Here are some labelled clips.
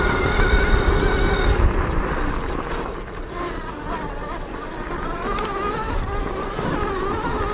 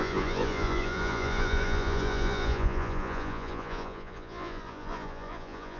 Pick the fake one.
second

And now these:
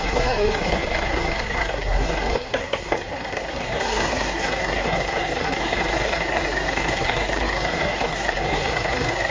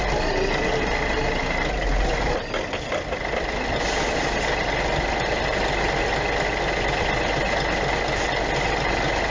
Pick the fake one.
first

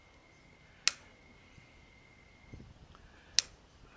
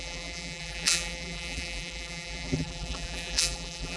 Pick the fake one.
second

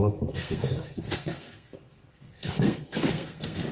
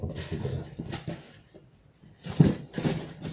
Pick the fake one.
first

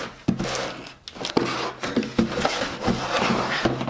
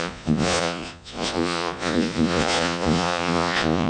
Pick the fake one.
second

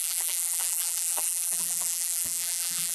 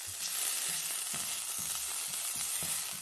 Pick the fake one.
first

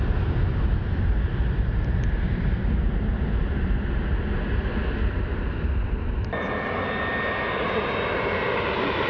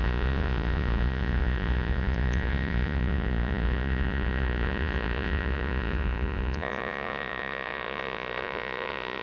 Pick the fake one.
second